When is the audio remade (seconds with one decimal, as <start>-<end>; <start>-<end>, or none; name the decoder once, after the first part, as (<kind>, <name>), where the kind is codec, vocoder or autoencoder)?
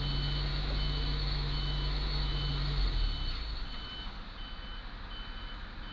0.5-2.5 (autoencoder, DAC-VAE)